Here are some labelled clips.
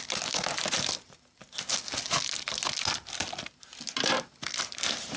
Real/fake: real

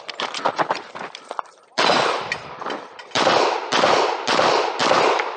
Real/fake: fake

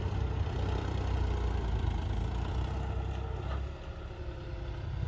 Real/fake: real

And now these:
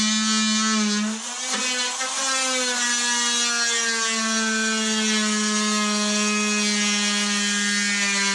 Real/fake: real